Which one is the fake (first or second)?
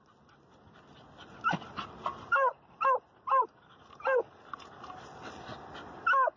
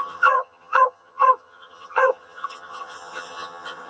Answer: second